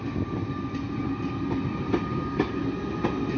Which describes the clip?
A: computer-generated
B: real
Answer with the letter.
B